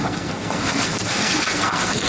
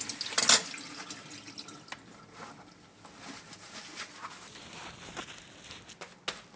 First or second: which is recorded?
second